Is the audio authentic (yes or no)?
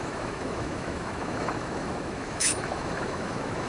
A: no